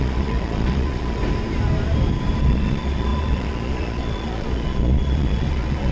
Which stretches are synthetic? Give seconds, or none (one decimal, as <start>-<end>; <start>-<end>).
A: 0.0-1.2; 2.4-5.9